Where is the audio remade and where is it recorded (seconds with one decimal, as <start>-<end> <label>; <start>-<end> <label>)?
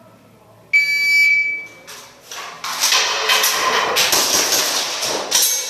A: 0.0-5.7 recorded